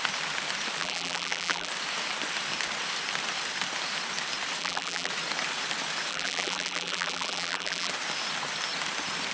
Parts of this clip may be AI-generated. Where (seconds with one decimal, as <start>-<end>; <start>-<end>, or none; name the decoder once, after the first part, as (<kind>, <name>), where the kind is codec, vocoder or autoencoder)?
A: 0.8-1.7 (vocoder, BigVGAN v2); 4.6-5.1; 6.1-7.9